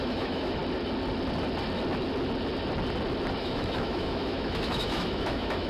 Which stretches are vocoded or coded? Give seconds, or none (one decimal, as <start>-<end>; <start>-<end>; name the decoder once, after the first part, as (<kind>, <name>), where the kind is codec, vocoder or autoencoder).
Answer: 0.0-0.6 (autoencoder, DAC-VAE); 3.4-5.7